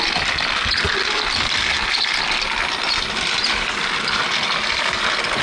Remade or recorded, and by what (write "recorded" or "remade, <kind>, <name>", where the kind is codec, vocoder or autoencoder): recorded